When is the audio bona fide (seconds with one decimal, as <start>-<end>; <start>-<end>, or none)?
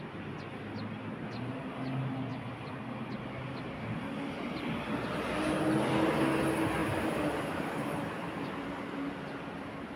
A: 0.0-2.3; 2.9-6.8; 8.4-10.0